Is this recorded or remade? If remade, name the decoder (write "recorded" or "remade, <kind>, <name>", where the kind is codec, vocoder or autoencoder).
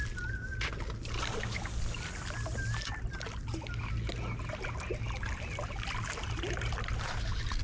recorded